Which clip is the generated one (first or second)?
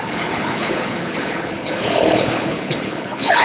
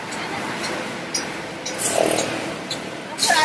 first